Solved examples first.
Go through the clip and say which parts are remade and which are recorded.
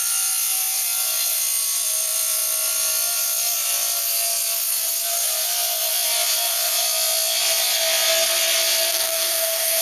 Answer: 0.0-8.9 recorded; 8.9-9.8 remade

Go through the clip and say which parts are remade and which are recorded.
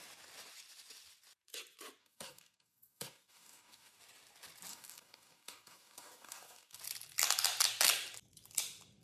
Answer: 0.0-2.0 recorded; 2.0-4.0 remade; 4.0-4.7 recorded; 4.7-6.8 remade; 6.8-9.0 recorded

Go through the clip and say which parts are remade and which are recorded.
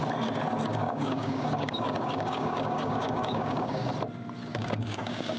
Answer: 0.0-0.7 recorded; 0.7-3.9 remade; 3.9-4.5 recorded; 4.5-5.4 remade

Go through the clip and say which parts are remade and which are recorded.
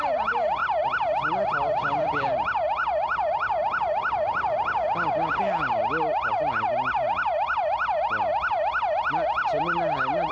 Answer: 0.0-10.3 recorded